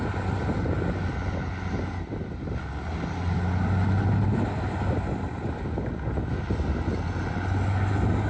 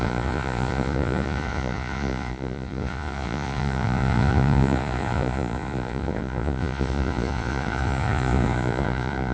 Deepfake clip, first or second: second